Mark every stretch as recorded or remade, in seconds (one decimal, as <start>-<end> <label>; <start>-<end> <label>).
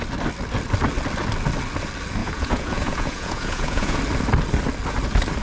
0.0-2.2 recorded; 2.2-4.0 remade; 4.0-5.4 recorded